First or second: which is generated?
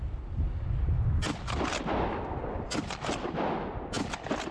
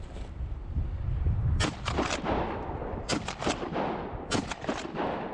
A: second